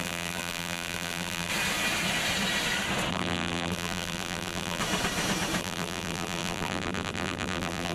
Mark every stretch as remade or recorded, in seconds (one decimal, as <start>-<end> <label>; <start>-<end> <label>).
0.0-1.5 remade; 1.5-3.1 recorded; 3.1-4.8 remade; 4.8-5.6 recorded; 5.6-7.9 remade